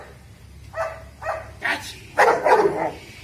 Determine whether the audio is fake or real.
real